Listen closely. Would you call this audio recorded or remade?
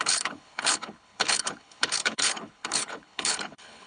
remade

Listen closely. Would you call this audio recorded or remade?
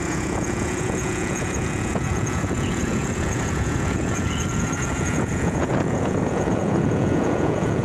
remade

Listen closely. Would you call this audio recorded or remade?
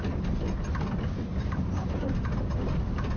recorded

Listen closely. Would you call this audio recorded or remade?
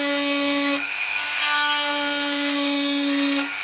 remade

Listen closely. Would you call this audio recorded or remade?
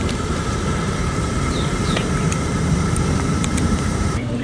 remade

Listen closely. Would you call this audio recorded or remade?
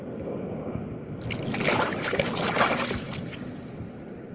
recorded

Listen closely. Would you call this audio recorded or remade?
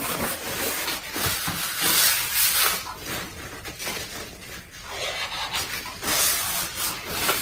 recorded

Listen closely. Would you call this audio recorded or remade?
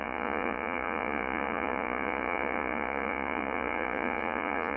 remade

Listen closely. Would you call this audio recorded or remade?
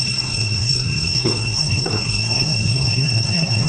remade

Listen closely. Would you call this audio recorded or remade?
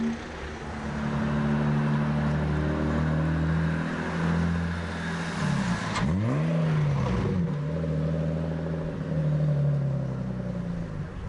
recorded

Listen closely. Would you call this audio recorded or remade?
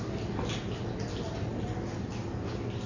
recorded